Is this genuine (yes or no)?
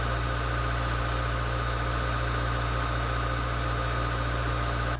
yes